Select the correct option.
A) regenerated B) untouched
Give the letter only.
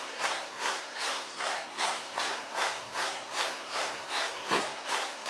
A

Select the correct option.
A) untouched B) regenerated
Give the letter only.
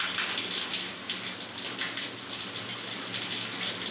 A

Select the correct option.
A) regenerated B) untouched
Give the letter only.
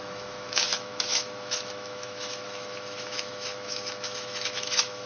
A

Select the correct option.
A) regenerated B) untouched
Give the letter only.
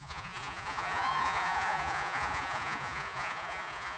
A